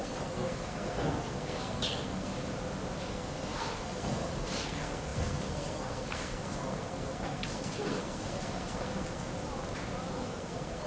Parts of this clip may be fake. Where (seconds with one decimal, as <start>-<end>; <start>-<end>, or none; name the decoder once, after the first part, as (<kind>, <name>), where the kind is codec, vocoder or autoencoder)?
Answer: 0.0-2.3 (codec, SNAC); 3.1-9.3; 10.1-10.9